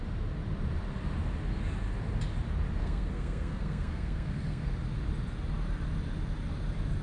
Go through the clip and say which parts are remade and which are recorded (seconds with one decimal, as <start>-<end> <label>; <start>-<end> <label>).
0.0-2.8 recorded; 2.8-4.7 remade; 4.7-7.0 recorded